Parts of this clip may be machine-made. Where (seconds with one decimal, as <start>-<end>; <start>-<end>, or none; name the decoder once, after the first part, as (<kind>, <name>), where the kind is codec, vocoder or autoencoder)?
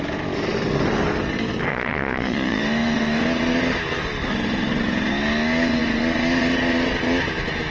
1.7-2.6 (vocoder, Vocos)